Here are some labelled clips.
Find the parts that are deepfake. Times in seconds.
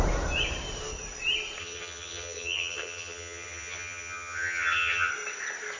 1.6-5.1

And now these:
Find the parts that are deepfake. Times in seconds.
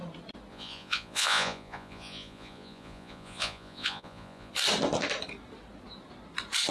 0.5-4.5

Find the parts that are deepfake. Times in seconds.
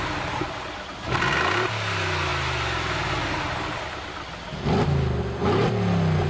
none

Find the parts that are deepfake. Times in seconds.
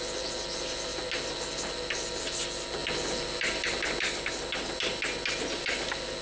none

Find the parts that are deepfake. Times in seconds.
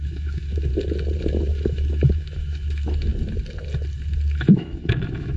0.0-0.7; 1.2-3.1; 4.4-5.4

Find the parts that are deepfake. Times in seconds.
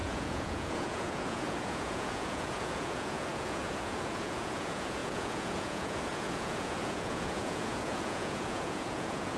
0.0-9.4